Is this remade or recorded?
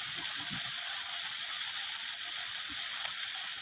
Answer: remade